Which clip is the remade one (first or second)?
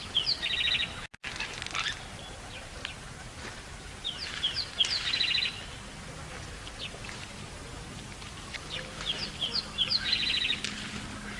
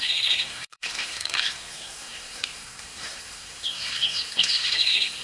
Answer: second